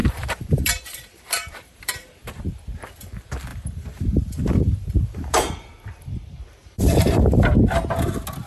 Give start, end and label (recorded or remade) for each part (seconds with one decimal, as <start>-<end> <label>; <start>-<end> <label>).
0.0-2.4 remade; 2.4-3.5 recorded; 3.5-6.0 remade; 6.0-6.6 recorded; 6.6-7.4 remade; 7.4-8.5 recorded